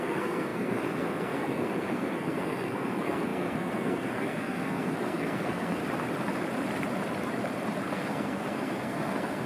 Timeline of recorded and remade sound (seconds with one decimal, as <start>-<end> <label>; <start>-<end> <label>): 0.0-5.8 remade; 5.8-7.9 recorded; 7.9-9.5 remade